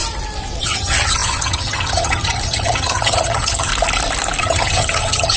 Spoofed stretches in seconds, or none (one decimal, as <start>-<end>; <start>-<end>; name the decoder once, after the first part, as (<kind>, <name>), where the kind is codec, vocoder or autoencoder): 0.6-3.7 (vocoder, HiFi-GAN); 4.4-5.4